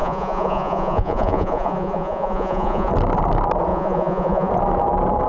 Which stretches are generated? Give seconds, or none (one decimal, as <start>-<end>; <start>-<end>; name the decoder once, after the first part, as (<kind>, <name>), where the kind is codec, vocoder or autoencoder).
0.0-2.9 (vocoder, Vocos); 3.7-4.5